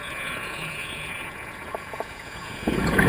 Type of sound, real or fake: fake